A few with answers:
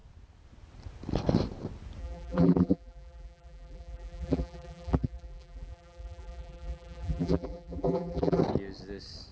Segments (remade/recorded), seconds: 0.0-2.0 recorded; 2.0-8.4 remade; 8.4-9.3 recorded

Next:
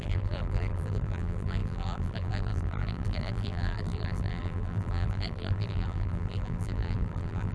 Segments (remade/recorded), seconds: 0.0-7.5 remade

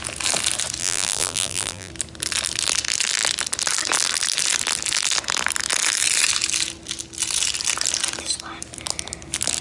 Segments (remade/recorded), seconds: 0.0-0.8 recorded; 0.8-1.9 remade; 1.9-9.6 recorded

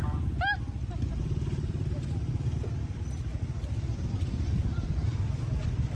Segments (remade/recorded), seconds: 0.0-1.1 recorded; 1.1-2.6 remade; 2.6-5.9 recorded

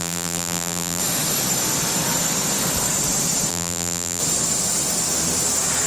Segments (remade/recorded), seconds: 0.0-1.0 remade; 1.0-3.5 recorded; 3.5-4.2 remade; 4.2-5.9 recorded

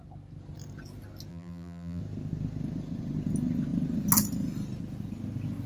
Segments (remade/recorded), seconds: 0.0-1.3 recorded; 1.3-2.0 remade; 2.0-5.7 recorded